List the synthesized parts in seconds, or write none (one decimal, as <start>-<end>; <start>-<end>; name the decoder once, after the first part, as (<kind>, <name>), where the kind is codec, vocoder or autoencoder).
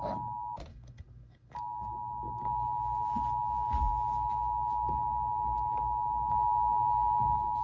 0.7-1.9 (autoencoder, DAC-VAE)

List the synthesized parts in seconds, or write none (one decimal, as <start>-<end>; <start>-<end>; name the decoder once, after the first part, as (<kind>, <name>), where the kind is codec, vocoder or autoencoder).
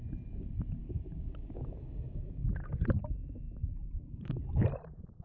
0.8-2.5 (autoencoder, DAC-VAE); 3.6-4.5